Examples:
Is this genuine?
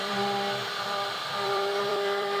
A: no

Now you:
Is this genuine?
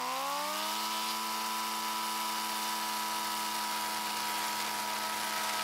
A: yes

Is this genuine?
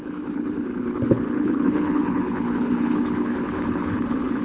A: no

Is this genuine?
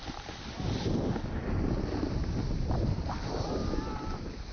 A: yes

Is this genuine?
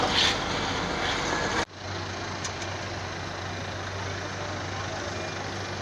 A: yes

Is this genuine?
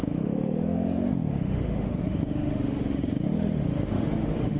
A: no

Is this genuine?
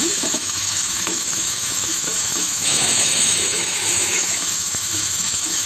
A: no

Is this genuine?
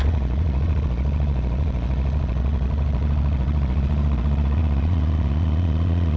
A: no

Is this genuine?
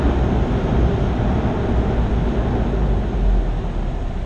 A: yes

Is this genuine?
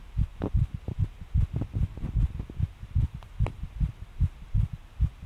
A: no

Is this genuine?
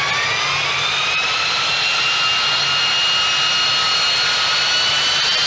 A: yes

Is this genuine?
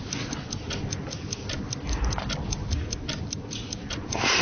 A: yes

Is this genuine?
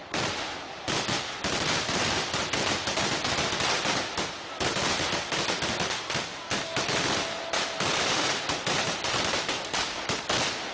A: yes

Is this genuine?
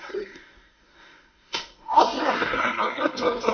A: no